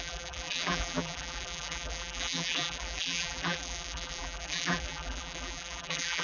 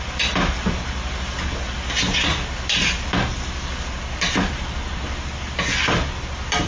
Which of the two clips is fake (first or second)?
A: first